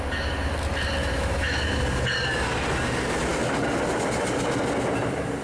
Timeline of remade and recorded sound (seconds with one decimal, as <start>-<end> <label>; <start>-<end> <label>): 0.0-1.0 recorded; 1.0-1.7 remade; 1.7-5.4 recorded